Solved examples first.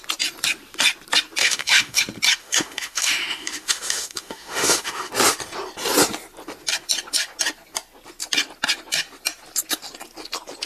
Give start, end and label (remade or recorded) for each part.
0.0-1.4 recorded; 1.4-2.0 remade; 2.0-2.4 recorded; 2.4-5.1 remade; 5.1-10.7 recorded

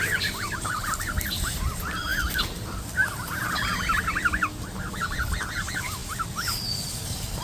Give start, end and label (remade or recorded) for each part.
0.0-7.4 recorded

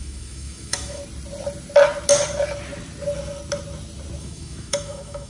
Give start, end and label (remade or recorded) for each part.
0.0-1.0 remade; 1.0-4.2 recorded; 4.2-5.3 remade

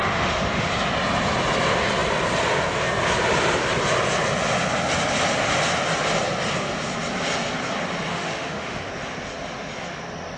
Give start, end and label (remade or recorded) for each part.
0.0-0.7 remade; 0.7-8.1 recorded; 8.1-8.9 remade; 8.9-10.4 recorded